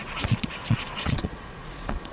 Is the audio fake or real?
fake